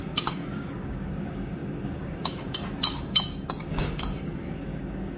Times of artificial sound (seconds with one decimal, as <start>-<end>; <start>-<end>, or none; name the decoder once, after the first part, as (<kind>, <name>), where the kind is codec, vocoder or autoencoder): 0.0-5.2 (codec, DAC)